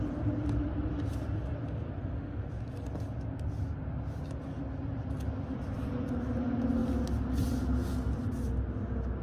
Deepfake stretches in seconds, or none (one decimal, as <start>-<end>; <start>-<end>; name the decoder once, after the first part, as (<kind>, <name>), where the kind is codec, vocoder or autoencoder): none